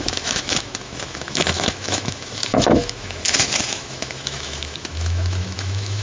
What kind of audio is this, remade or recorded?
remade